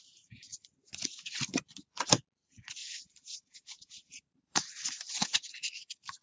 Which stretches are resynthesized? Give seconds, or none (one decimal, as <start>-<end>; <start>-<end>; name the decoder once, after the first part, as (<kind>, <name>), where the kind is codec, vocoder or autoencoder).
2.8-5.7 (vocoder, BigVGAN v2)